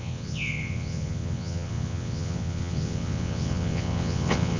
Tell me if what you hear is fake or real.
fake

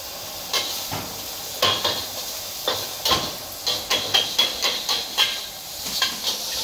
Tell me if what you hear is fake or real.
real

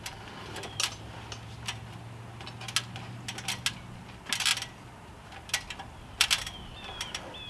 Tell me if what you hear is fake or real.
real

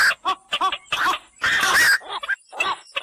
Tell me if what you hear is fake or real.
real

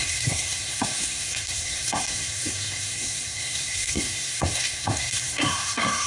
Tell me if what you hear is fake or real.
fake